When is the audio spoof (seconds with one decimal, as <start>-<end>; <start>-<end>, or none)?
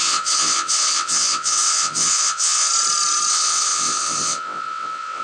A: 0.0-2.7; 3.3-5.2